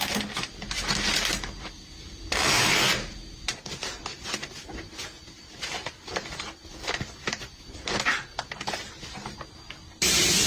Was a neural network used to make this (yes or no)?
yes